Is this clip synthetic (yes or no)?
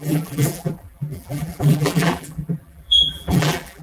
yes